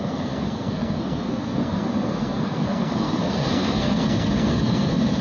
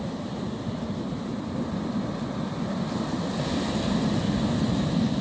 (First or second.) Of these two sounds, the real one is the second